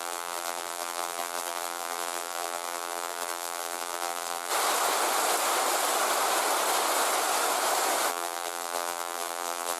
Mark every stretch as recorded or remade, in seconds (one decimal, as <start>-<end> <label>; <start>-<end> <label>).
0.0-4.5 remade; 4.5-8.1 recorded; 8.1-9.8 remade

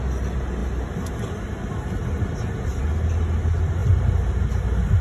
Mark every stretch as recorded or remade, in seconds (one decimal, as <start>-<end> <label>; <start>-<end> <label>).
0.0-5.0 recorded

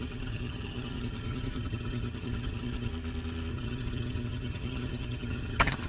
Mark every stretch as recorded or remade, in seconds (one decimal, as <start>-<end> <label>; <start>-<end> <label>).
0.0-2.9 remade; 2.9-3.5 recorded; 3.5-5.9 remade

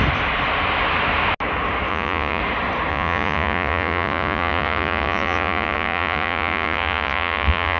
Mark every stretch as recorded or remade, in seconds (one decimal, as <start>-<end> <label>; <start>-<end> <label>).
0.0-1.9 recorded; 1.9-2.4 remade; 2.4-2.9 recorded; 2.9-7.8 remade

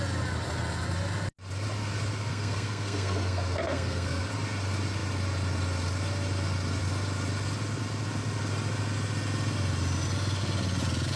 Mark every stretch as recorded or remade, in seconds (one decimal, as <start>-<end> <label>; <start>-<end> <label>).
0.0-2.3 recorded; 2.3-4.3 remade; 4.3-11.2 recorded

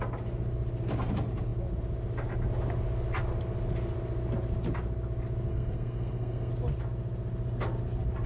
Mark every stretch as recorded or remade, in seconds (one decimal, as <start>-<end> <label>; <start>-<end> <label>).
0.0-5.5 recorded; 5.5-6.5 remade; 6.5-8.3 recorded

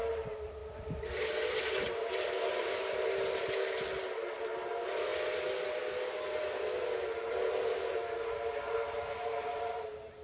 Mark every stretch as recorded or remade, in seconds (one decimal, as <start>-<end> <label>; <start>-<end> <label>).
0.0-10.2 recorded